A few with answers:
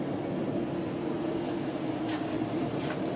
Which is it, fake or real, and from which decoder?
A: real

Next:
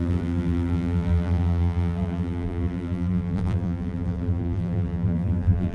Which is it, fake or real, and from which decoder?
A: fake, vocoder, BigVGAN v2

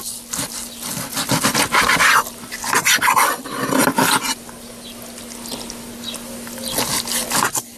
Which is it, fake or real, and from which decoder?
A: real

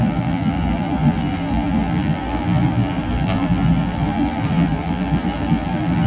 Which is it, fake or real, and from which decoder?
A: fake, vocoder, BigVGAN v2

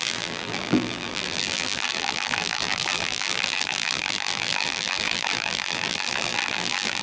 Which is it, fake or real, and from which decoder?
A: fake, vocoder, BigVGAN v2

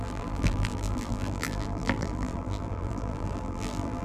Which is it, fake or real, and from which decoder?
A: fake, vocoder, BigVGAN v2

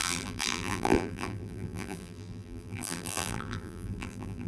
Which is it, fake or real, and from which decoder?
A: fake, vocoder, BigVGAN v2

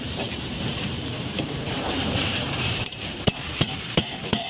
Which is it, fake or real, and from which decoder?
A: fake, vocoder, BigVGAN v2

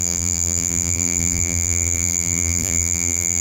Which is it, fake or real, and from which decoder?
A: fake, vocoder, BigVGAN v2